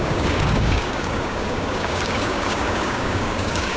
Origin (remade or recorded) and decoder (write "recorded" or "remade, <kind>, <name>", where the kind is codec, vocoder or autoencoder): remade, codec, DAC